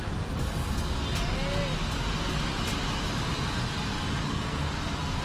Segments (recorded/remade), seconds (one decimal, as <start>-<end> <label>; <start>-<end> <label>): 0.0-4.2 recorded; 4.2-4.8 remade; 4.8-5.2 recorded